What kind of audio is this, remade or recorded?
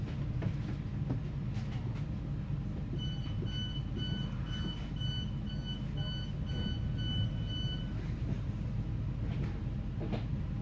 recorded